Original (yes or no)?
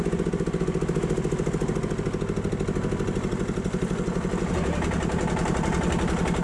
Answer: yes